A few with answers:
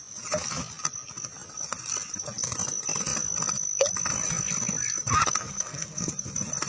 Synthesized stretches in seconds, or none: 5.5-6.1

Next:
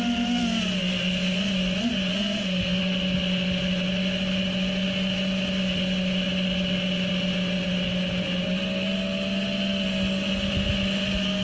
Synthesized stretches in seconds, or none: 2.1-2.8